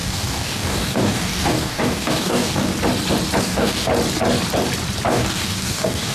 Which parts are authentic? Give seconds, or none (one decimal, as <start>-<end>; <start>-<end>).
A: 2.7-3.4; 3.9-5.1